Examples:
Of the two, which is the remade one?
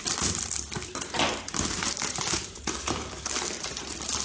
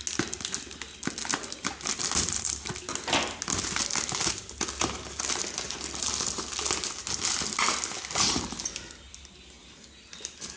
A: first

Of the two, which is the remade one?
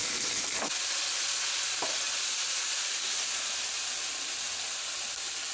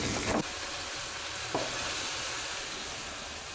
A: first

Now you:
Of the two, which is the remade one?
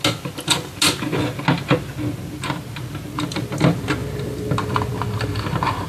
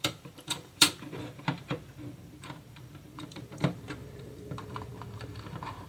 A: second